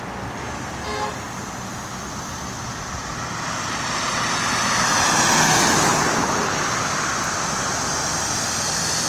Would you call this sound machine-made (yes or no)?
no